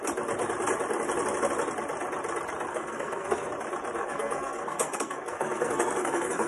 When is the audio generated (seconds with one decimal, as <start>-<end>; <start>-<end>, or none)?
2.7-3.5; 4.0-6.5